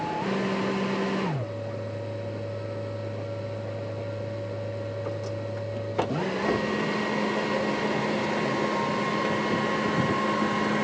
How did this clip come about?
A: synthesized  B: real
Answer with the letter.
B